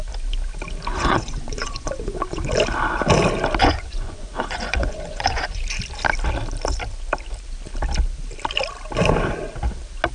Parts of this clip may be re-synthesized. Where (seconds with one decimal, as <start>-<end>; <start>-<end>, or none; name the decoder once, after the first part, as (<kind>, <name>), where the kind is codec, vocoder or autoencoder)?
0.9-2.5 (vocoder, Vocos); 3.6-5.6